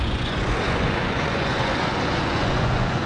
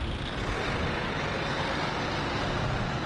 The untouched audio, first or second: second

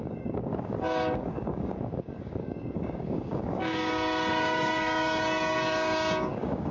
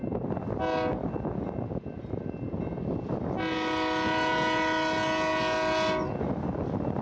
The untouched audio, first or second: second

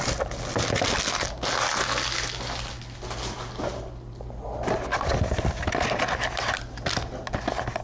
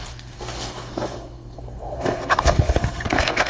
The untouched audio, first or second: first